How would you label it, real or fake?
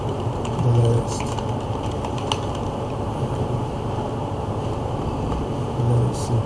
fake